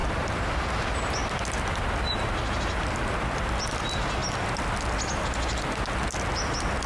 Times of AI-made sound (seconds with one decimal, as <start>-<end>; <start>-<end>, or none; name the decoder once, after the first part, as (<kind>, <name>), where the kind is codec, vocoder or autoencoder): 0.0-0.5 (vocoder, BigVGAN v2); 1.2-3.5